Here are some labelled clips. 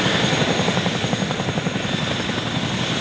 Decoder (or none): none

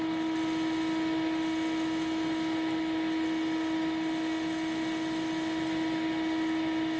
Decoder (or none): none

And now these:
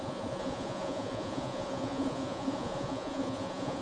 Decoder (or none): vocoder, Vocos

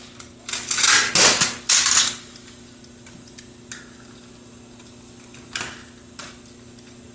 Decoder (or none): none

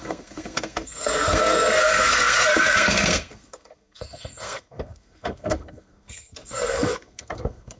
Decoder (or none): codec, SNAC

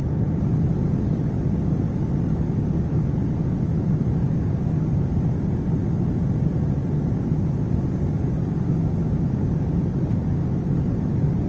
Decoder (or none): none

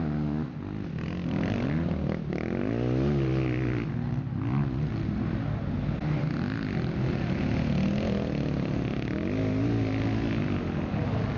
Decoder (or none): none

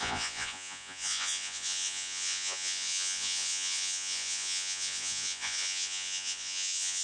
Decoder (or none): vocoder, Vocos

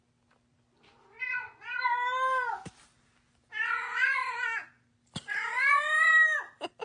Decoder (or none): none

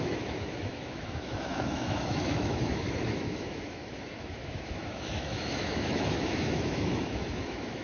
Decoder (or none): autoencoder, DAC-VAE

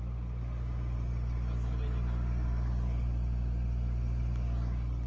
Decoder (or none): none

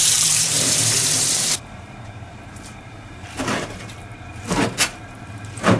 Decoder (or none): vocoder, BigVGAN v2